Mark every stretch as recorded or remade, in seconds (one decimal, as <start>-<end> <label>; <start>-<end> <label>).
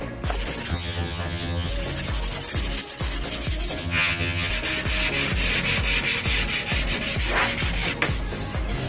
0.0-0.7 recorded; 0.7-1.7 remade; 1.7-3.8 recorded; 3.8-4.5 remade; 4.5-8.9 recorded